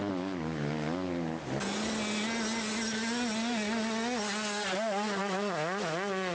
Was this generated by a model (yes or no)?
no